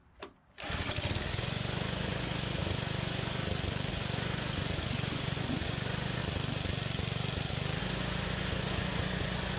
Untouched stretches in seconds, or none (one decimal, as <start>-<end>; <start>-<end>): 0.0-1.3; 3.4-3.9; 6.2-7.8